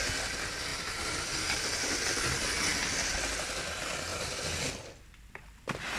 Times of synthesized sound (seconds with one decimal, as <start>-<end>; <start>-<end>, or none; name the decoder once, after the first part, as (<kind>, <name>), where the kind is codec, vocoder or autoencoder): 0.7-1.6 (vocoder, BigVGAN v2); 4.1-5.2